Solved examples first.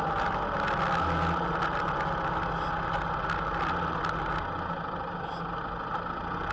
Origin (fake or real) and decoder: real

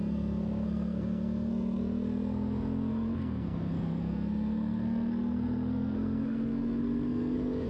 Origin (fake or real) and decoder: fake, codec, SNAC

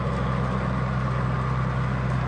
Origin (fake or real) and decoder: real